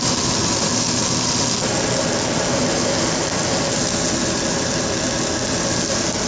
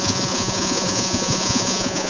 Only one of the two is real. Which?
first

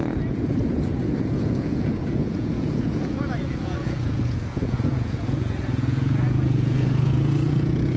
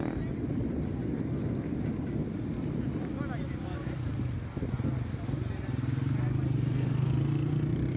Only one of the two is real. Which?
second